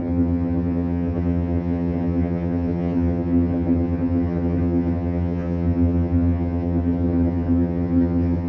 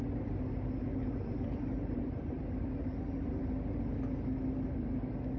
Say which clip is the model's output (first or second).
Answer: first